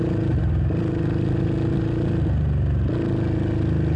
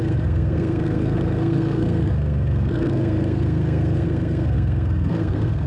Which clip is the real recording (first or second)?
first